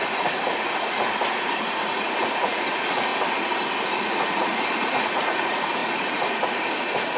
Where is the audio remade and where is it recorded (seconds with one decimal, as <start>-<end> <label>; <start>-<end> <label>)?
0.0-3.1 remade; 3.1-3.8 recorded; 3.8-7.2 remade